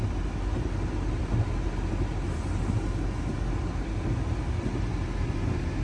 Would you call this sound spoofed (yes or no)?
no